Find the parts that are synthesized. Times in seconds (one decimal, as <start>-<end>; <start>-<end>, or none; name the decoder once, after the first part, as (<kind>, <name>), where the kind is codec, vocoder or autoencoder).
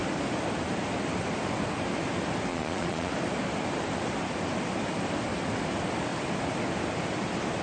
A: 2.5-3.1 (vocoder, Vocos)